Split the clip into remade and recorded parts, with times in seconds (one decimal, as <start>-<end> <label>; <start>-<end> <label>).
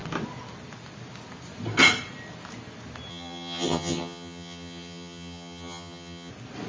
0.0-3.1 recorded; 3.1-6.3 remade; 6.3-6.7 recorded